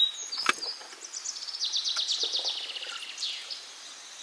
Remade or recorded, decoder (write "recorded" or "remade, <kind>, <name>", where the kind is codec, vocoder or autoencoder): recorded